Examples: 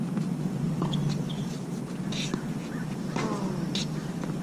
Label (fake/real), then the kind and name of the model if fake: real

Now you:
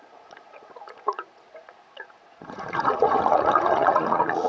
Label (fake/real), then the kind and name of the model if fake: fake, vocoder, Vocos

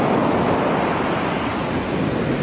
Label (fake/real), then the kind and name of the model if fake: real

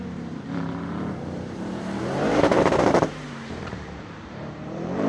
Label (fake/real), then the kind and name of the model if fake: fake, vocoder, BigVGAN v2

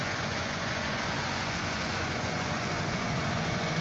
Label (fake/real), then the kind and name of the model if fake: fake, vocoder, Vocos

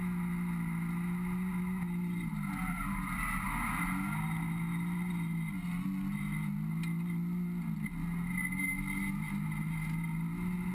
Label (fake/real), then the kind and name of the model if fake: real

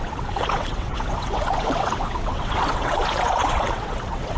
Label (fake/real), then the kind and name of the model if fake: fake, vocoder, WaveNeXt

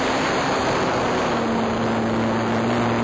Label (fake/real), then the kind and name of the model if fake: real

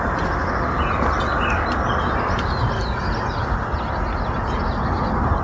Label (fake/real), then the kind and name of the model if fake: real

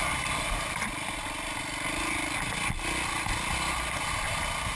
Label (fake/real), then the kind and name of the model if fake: real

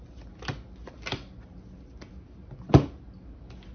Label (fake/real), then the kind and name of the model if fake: real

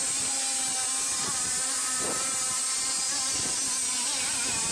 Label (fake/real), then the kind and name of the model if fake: real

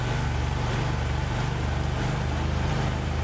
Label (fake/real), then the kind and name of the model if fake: real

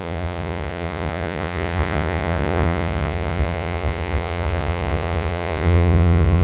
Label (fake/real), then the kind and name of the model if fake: fake, vocoder, Vocos